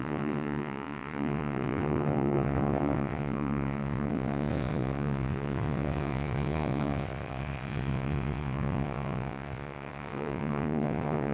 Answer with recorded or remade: remade